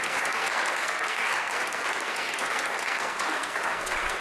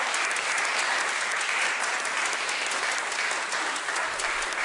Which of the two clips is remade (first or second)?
first